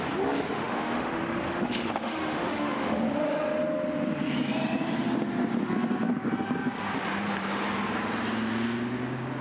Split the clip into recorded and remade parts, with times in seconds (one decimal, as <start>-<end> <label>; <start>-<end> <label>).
0.0-0.5 recorded; 0.5-3.0 remade; 3.0-9.4 recorded